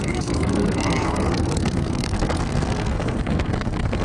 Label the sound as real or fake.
fake